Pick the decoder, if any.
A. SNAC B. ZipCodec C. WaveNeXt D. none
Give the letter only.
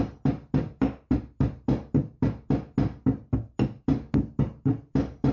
D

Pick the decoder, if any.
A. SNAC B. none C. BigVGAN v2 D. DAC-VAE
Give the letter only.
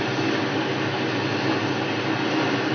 B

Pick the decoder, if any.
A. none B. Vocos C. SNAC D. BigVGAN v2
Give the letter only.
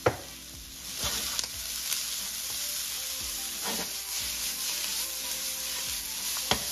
A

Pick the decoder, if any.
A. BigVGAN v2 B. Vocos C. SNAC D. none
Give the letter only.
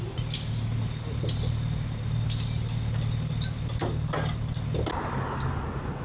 D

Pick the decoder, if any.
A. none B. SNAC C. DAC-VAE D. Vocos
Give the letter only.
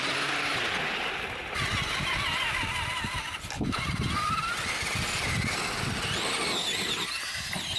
A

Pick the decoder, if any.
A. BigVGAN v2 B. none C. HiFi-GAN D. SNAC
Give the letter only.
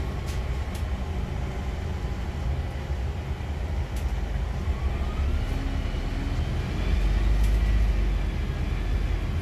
B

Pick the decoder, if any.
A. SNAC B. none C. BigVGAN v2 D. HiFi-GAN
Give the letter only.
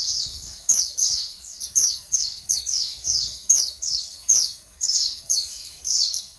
A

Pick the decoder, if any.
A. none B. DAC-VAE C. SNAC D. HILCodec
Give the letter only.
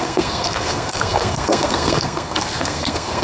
C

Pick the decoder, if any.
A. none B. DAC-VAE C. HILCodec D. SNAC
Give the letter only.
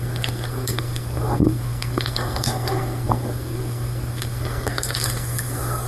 D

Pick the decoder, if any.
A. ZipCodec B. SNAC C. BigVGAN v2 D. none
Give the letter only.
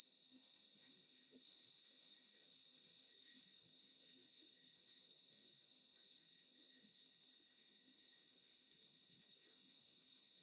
B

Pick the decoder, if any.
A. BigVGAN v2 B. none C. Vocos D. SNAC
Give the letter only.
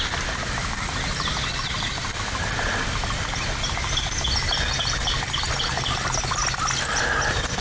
B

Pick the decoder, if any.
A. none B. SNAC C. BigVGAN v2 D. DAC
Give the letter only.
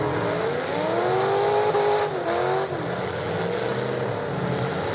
A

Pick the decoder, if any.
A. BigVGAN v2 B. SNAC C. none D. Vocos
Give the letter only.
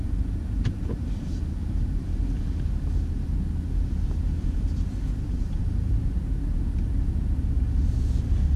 C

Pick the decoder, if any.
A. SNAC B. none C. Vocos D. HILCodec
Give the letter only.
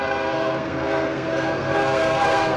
A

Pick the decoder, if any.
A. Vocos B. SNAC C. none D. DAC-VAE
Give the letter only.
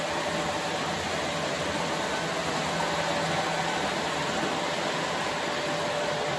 C